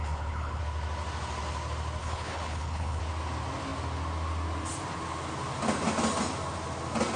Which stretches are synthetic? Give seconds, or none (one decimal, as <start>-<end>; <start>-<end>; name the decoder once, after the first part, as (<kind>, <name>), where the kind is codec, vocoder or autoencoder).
0.0-0.6 (codec, HILCodec); 2.0-3.0